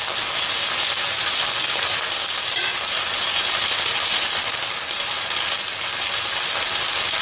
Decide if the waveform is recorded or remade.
recorded